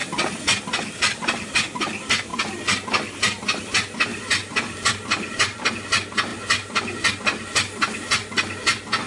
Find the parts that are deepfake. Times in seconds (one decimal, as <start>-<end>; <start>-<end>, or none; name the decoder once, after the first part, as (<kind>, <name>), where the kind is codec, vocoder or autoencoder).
0.0-1.5 (vocoder, BigVGAN v2); 2.3-3.6; 4.1-5.7